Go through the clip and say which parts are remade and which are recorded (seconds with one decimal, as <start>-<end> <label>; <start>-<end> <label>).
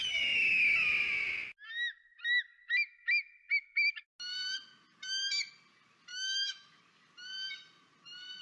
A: 0.0-6.1 recorded; 6.1-6.8 remade; 6.8-8.4 recorded